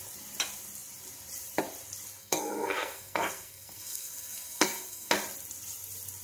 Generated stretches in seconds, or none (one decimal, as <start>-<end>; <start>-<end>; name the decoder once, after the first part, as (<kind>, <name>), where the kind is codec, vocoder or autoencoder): 2.2-5.1 (codec, SNAC)